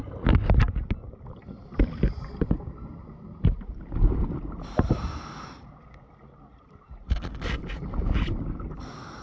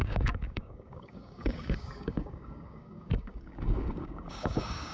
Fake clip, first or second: second